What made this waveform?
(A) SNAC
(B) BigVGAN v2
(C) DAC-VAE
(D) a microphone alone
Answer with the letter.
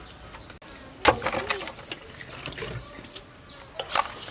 D